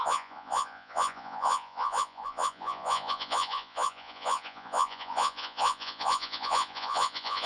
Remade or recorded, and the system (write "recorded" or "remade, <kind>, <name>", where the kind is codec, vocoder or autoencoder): remade, vocoder, Vocos